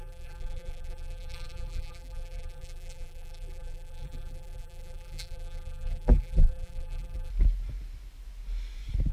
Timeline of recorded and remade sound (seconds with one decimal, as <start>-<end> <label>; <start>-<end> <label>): 0.0-7.3 remade; 7.3-9.1 recorded